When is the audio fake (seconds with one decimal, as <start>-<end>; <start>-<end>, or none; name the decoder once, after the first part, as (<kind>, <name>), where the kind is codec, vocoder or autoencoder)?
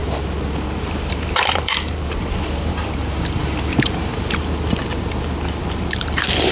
0.8-4.8 (vocoder, BigVGAN v2); 5.9-6.5